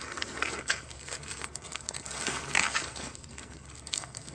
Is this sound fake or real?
fake